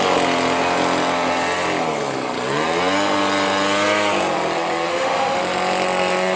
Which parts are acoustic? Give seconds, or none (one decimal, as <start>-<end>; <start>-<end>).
0.0-4.9; 5.4-6.4